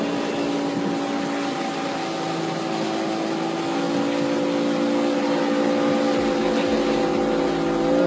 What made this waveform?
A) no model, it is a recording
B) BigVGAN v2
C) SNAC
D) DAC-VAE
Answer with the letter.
A